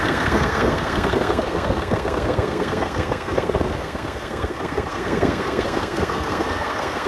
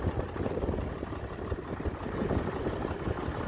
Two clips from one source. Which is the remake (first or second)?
first